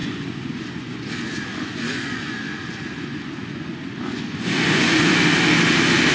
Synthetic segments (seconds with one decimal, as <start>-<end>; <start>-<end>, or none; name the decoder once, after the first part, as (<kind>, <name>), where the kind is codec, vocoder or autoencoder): 0.0-1.1 (vocoder, Vocos); 1.5-5.2